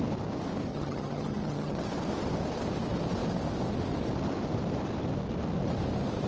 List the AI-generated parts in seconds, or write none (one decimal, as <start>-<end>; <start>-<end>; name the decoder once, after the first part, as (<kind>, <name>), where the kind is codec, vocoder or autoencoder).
0.7-1.9 (vocoder, HiFi-GAN)